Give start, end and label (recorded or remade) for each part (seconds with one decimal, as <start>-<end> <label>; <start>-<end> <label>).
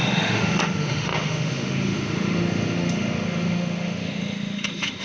0.0-5.0 remade